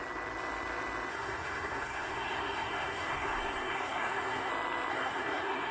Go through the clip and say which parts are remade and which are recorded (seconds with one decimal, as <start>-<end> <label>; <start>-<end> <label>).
0.0-1.1 recorded; 1.1-4.5 remade; 4.5-4.9 recorded; 4.9-5.7 remade